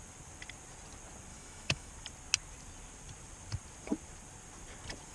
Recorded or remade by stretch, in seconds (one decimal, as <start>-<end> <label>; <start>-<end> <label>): 0.0-1.3 recorded; 1.3-1.9 remade; 1.9-5.1 recorded